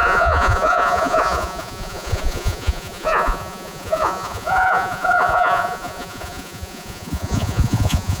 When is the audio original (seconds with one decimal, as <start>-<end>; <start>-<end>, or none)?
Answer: none